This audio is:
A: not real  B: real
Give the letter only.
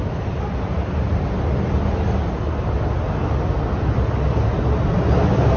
B